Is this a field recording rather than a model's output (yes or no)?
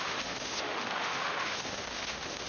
no